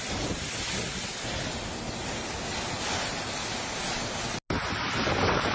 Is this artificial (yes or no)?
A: no